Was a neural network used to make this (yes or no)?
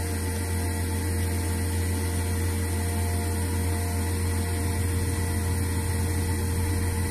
no